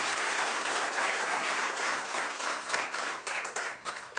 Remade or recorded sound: remade